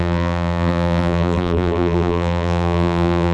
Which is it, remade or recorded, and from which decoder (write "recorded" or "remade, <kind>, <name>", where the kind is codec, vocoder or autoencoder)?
remade, vocoder, BigVGAN v2